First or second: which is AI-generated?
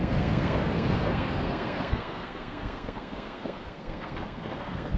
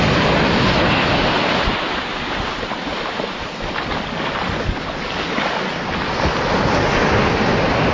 first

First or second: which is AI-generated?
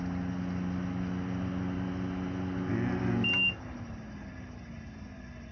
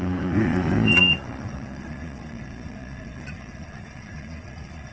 second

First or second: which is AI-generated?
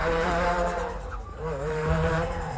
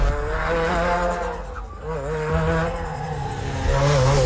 first